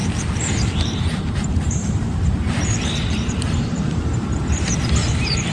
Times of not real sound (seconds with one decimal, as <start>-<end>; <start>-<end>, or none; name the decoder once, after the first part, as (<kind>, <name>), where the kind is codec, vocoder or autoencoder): 0.6-5.5 (vocoder, BigVGAN v2)

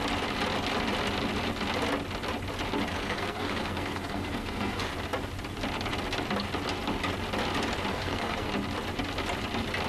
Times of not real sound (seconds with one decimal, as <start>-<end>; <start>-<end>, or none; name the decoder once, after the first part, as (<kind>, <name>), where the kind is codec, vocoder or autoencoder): 2.9-4.9 (codec, SNAC); 7.9-8.5

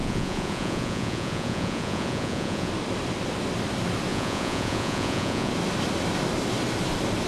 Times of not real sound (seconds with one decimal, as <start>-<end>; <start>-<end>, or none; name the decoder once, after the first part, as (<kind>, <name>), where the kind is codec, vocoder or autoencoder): 0.0-2.7 (vocoder, Vocos); 4.1-5.5

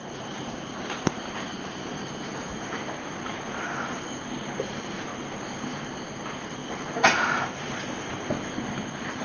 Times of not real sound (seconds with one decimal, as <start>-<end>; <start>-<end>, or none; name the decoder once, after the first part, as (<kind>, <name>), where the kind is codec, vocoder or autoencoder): 0.0-5.1 (vocoder, BigVGAN v2); 6.7-9.2